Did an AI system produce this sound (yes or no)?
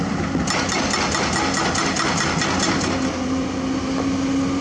no